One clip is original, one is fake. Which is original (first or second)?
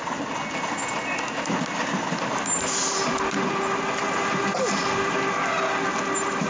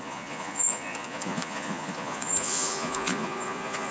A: first